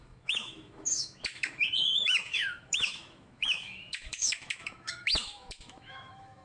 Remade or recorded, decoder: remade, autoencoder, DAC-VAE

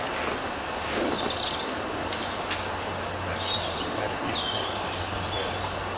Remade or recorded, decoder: recorded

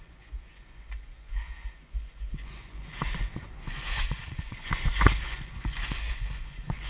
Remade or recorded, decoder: remade, vocoder, Vocos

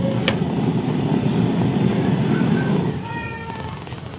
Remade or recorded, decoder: recorded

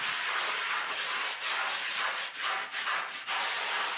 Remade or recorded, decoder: recorded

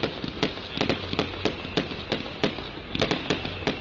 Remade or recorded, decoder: recorded